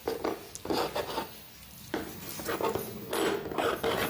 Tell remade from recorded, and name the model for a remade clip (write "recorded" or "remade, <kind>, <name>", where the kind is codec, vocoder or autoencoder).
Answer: recorded